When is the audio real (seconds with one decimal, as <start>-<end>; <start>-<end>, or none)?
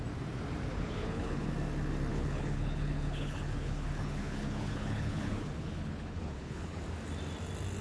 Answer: 0.0-0.7; 1.5-2.1; 6.8-7.8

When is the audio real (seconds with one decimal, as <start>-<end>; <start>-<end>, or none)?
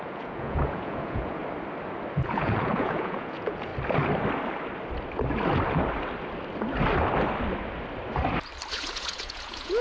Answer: 1.4-2.1; 3.7-8.7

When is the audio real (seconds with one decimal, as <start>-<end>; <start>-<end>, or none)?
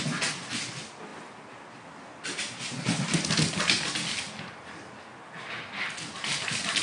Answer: 0.0-6.8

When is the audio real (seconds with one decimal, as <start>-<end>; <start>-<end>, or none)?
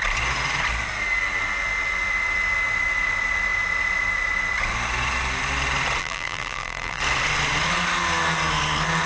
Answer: 0.0-6.0; 7.0-9.1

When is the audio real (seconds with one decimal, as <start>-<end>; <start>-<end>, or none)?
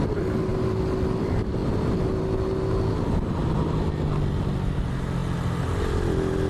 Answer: 0.0-6.5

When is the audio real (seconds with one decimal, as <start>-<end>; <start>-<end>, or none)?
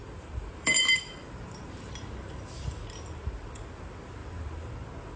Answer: 1.9-4.2; 4.7-5.2